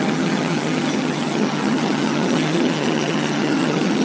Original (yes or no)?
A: no